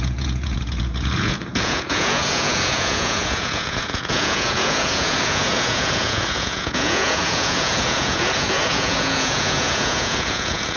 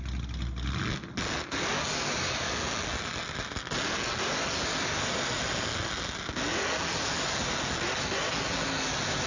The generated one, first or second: first